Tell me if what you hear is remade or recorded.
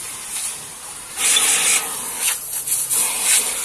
recorded